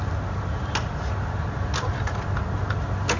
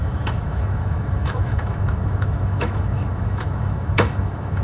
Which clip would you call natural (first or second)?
first